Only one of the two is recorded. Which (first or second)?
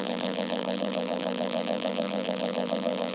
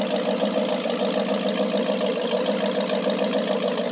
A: second